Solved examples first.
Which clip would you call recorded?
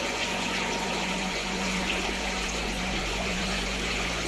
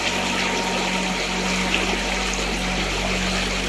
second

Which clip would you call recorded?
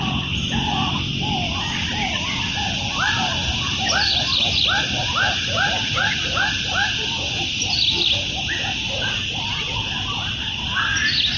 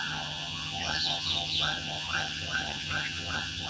first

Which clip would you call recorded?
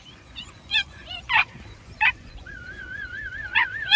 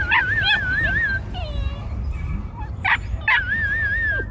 second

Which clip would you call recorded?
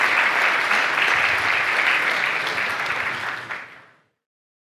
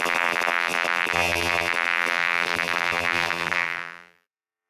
first